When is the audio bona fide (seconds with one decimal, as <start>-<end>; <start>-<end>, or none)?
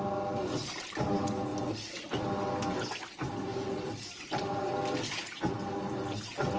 0.0-3.5; 4.7-6.6